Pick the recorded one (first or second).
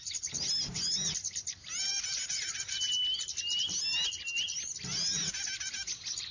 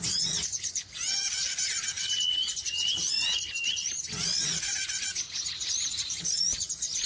first